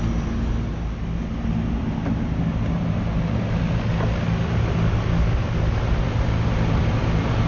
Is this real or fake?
real